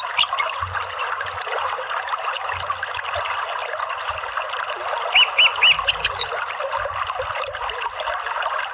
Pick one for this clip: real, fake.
real